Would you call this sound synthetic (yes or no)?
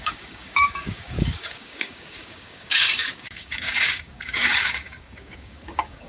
yes